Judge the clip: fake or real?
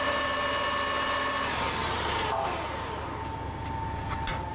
real